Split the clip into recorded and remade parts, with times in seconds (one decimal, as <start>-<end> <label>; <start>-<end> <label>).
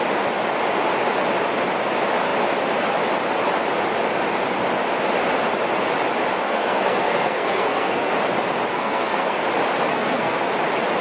0.0-6.4 recorded; 6.4-8.1 remade; 8.1-8.7 recorded; 8.7-9.4 remade; 9.4-9.9 recorded; 9.9-10.4 remade; 10.4-11.0 recorded